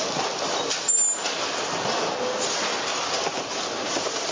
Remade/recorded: recorded